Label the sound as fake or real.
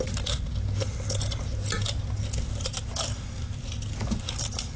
real